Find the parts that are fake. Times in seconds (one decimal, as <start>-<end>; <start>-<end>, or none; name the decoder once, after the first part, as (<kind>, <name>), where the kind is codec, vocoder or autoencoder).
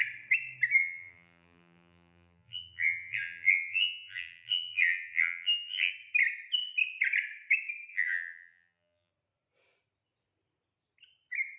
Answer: 0.8-5.9 (vocoder, BigVGAN v2); 7.9-9.1